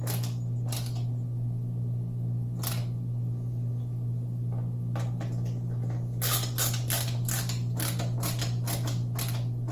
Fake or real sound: real